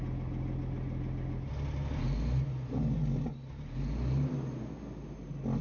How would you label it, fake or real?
real